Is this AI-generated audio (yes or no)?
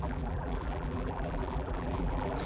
yes